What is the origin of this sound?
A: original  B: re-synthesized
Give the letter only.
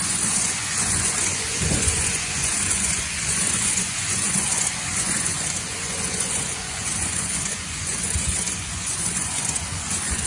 B